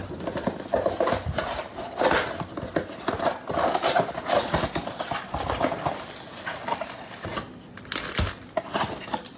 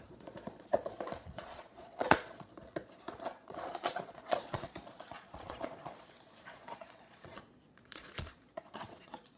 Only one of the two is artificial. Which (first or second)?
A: second